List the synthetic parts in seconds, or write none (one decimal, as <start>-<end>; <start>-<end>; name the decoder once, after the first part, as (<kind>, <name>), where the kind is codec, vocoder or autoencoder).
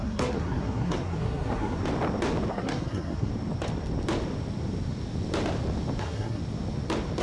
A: 0.0-1.8 (codec, SNAC); 2.5-3.3; 6.0-6.4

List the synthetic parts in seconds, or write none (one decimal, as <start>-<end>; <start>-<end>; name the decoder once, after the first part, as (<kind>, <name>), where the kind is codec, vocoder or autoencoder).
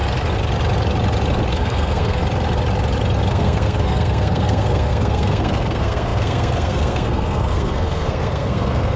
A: 1.5-2.2 (codec, SNAC); 3.3-9.0